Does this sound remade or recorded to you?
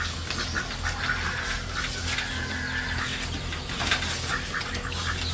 recorded